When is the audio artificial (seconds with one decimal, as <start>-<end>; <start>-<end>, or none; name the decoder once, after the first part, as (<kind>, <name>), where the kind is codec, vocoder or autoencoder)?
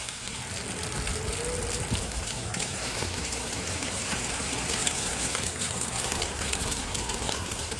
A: 0.0-0.4 (codec, SNAC); 2.0-7.8